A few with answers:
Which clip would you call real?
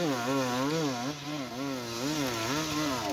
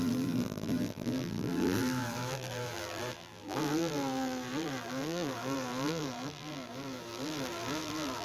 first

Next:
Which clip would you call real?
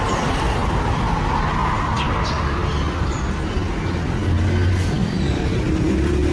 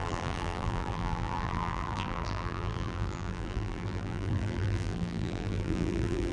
first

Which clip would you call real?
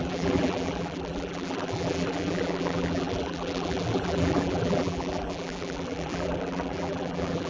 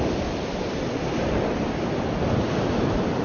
second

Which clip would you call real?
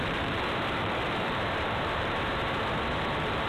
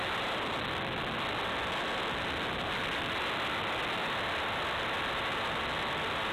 second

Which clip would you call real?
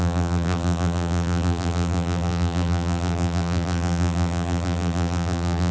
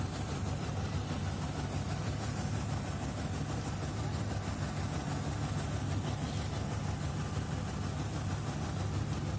second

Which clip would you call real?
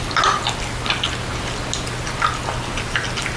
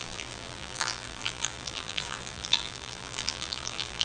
first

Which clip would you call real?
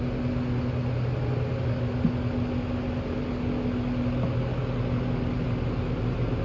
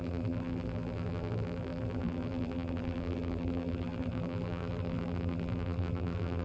first